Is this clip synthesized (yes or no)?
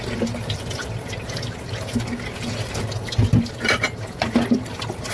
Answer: no